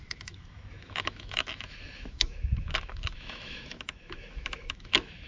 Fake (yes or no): yes